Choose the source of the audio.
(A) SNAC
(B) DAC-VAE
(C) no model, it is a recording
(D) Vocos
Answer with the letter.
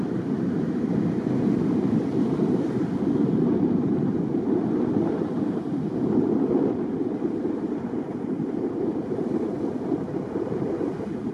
C